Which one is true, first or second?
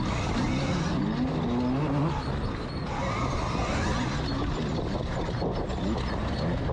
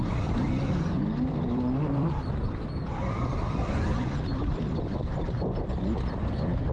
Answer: first